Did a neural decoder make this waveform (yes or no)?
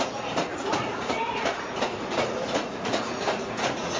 yes